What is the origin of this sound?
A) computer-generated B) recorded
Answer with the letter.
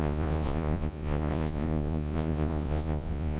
A